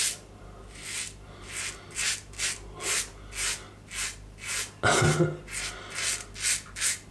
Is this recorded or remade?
recorded